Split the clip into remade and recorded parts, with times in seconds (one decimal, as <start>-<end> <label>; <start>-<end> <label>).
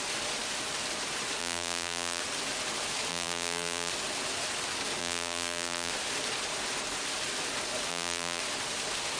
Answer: 0.0-1.4 recorded; 1.4-2.2 remade; 2.2-3.1 recorded; 3.1-3.9 remade; 3.9-5.0 recorded; 5.0-5.9 remade; 5.9-7.9 recorded; 7.9-8.4 remade; 8.4-9.2 recorded